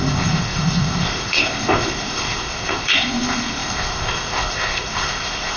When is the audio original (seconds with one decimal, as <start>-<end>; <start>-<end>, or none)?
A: none